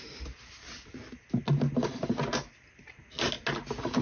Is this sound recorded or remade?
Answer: recorded